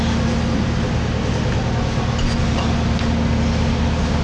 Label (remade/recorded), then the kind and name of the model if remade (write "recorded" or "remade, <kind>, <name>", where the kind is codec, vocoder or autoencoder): recorded